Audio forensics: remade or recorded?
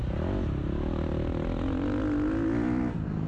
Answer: recorded